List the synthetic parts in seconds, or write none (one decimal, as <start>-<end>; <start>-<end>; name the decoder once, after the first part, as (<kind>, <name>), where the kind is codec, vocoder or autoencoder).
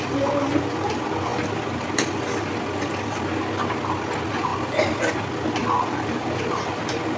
1.3-3.4 (vocoder, BigVGAN v2); 4.5-5.1; 5.6-6.8